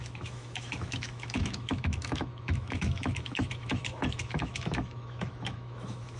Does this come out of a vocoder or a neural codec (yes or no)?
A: yes